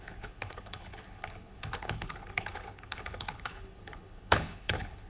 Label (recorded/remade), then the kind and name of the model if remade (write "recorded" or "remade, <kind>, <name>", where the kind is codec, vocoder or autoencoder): remade, codec, HILCodec